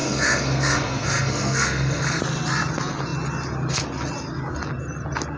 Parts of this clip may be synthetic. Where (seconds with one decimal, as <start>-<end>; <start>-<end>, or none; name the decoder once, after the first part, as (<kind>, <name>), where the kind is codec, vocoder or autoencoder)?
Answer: 0.0-2.2 (codec, SNAC)